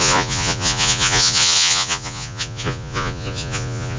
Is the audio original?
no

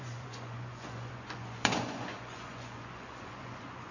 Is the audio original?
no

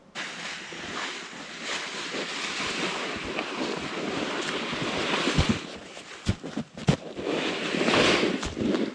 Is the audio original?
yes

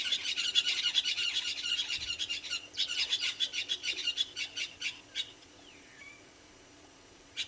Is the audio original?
no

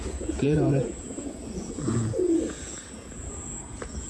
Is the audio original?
no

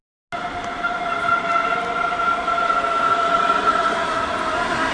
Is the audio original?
yes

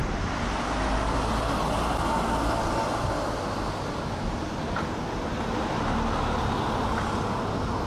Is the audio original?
yes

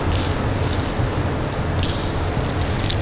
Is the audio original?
yes